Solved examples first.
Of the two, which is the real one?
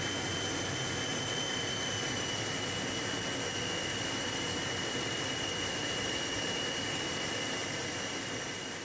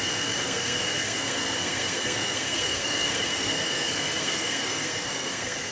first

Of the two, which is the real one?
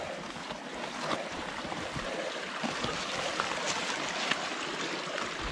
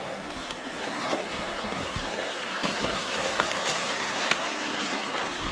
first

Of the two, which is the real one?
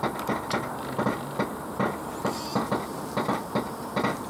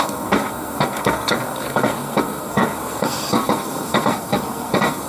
first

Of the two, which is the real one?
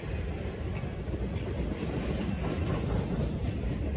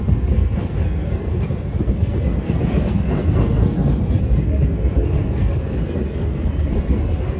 first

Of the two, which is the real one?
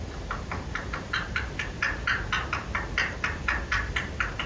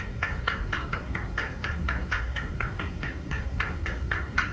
first